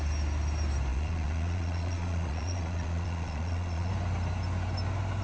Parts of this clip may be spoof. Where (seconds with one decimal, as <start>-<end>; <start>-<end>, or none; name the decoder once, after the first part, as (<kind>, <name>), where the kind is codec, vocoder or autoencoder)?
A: 0.9-3.9 (vocoder, Vocos)